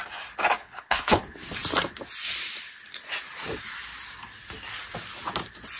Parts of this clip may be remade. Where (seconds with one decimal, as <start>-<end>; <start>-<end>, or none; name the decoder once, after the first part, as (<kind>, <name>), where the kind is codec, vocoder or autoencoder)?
0.6-1.2 (codec, HILCodec)